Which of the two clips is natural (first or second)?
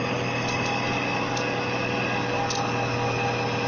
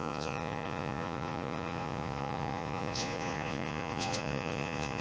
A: first